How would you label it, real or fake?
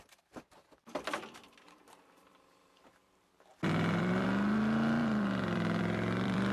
fake